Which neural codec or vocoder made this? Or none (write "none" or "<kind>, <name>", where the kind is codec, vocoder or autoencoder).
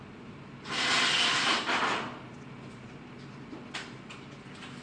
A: none